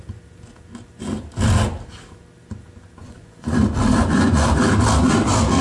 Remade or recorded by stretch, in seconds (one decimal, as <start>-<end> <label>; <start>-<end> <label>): 0.0-3.0 recorded; 3.0-3.6 remade; 3.6-4.0 recorded; 4.0-4.5 remade; 4.5-5.6 recorded